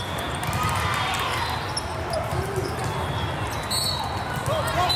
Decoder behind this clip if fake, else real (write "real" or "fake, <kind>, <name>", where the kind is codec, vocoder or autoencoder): real